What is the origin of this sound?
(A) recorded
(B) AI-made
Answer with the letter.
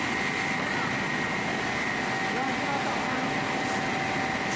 A